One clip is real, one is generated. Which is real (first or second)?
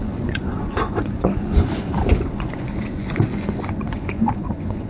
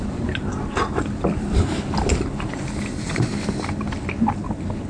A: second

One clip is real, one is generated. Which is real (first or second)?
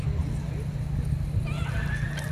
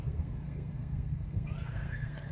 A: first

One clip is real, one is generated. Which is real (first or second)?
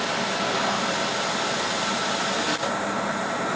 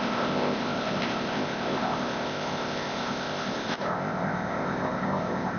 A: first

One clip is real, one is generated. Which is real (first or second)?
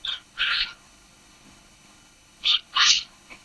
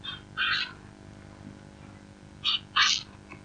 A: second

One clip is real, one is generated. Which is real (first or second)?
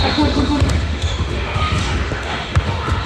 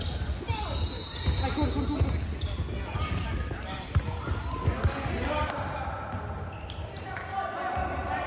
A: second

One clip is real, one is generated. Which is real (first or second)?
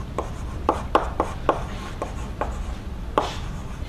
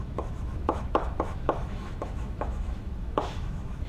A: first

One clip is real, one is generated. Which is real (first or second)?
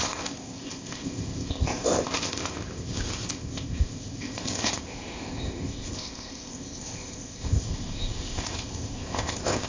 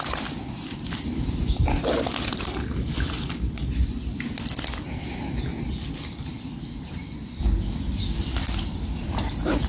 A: second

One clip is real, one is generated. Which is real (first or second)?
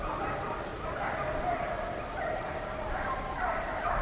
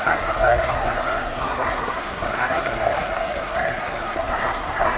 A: first